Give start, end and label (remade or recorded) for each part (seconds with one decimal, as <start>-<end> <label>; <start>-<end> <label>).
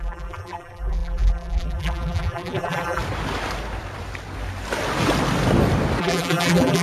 0.0-3.0 remade; 3.0-6.0 recorded; 6.0-6.8 remade